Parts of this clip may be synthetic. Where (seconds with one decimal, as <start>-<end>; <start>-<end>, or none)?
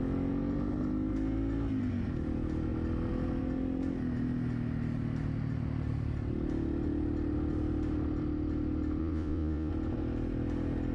9.0-9.7